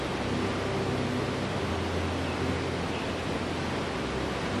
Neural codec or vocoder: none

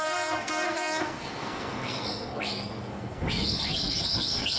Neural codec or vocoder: codec, SNAC